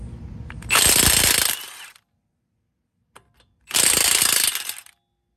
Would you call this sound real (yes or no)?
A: yes